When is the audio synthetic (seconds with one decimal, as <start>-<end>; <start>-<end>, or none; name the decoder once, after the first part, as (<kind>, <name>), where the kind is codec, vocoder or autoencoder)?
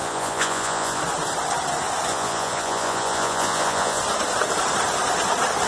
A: 0.0-1.0 (vocoder, Vocos); 2.1-4.0